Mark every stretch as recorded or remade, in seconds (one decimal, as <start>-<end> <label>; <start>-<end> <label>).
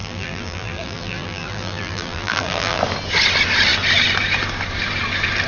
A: 0.0-2.8 remade; 2.8-5.5 recorded